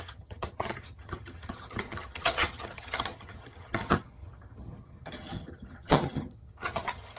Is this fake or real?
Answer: fake